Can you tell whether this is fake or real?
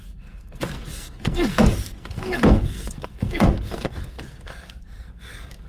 fake